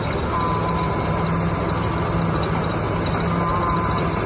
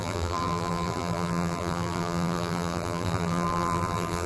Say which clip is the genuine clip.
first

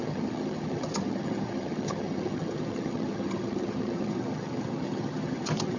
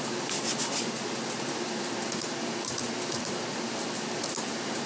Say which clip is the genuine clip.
second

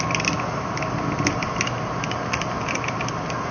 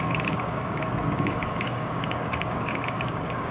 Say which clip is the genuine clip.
first